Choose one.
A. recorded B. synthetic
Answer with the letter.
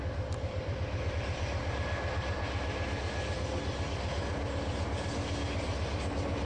A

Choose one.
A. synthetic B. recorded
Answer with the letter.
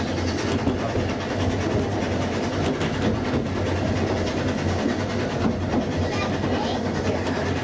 B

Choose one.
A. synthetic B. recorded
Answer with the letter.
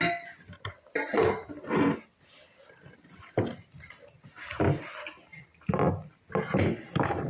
B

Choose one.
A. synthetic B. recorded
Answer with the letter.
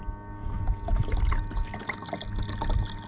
B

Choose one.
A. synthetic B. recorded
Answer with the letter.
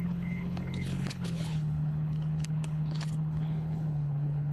A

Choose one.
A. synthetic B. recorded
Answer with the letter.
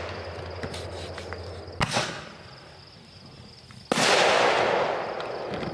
B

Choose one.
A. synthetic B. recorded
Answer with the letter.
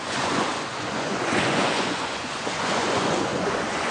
A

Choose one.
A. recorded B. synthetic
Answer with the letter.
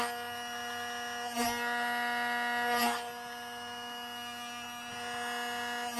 A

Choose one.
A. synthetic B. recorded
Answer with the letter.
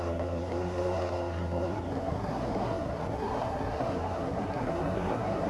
A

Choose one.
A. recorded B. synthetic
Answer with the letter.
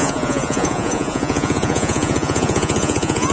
B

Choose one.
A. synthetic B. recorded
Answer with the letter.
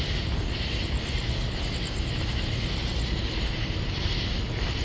B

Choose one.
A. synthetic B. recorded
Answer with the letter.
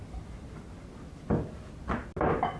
B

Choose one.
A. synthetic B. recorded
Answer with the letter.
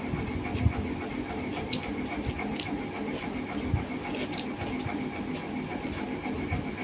B